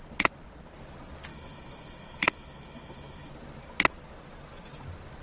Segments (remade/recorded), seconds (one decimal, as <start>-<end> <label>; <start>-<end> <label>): 0.0-1.3 recorded; 1.3-3.3 remade; 3.3-5.2 recorded